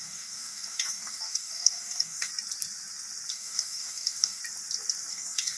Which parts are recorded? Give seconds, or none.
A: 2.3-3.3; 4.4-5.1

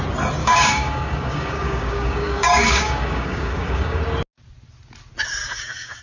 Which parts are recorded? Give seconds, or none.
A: 0.0-0.4; 4.0-5.4